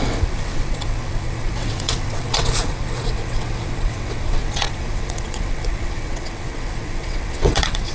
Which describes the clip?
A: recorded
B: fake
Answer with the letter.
B